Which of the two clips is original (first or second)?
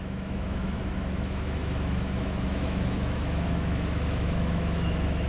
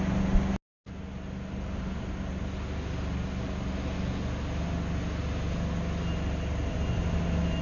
second